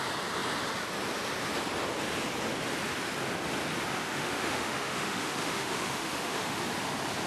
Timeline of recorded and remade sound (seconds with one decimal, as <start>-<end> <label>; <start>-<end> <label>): 0.0-4.0 recorded; 4.0-6.6 remade; 6.6-7.3 recorded